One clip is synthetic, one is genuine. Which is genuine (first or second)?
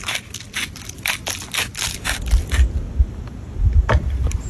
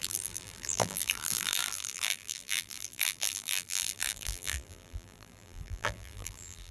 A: first